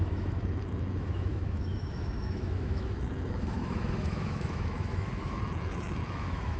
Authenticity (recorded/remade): remade